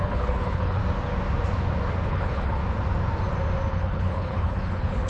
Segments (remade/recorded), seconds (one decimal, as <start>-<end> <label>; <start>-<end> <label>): 0.0-0.8 remade; 0.8-2.1 recorded; 2.1-2.6 remade; 2.6-3.7 recorded; 3.7-5.1 remade